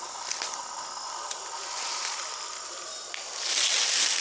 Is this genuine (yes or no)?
yes